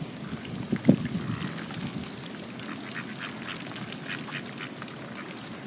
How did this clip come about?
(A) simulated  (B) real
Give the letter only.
B